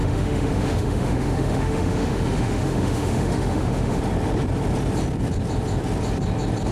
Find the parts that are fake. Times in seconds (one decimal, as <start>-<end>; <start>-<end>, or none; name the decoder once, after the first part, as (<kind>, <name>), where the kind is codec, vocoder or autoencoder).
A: 0.0-4.0 (autoencoder, DAC-VAE)